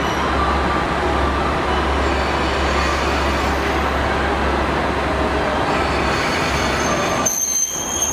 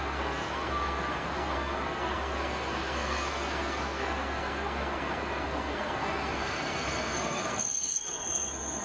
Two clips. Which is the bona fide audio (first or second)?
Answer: first